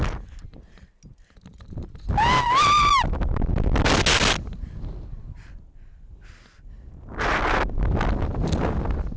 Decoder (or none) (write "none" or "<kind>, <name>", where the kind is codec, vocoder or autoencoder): none